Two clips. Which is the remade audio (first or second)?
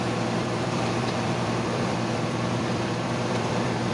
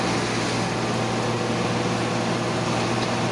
first